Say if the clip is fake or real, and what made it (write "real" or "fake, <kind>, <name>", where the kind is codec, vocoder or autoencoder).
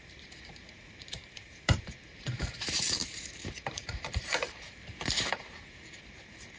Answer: fake, vocoder, BigVGAN v2